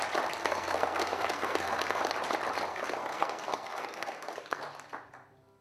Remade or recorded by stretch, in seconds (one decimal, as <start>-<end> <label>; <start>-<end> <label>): 0.0-0.4 recorded; 0.4-2.0 remade; 2.0-2.7 recorded; 2.7-4.6 remade; 4.6-5.6 recorded